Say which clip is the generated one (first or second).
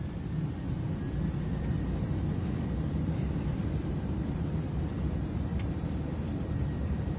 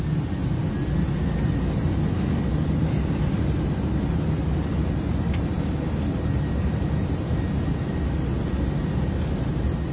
first